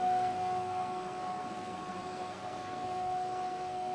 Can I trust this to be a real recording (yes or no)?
no